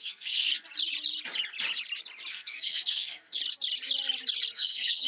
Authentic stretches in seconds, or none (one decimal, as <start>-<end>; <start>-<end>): 0.5-2.3; 3.4-4.5